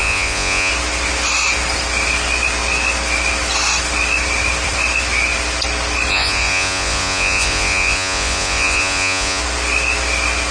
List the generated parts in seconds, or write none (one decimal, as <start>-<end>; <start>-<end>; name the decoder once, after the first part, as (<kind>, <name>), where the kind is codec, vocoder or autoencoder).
0.0-0.7 (vocoder, Vocos); 6.1-9.4